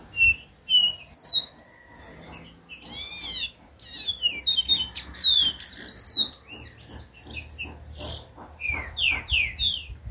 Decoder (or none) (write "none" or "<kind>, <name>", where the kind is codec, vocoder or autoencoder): none